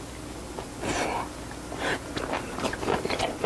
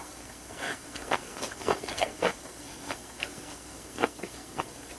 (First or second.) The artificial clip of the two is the second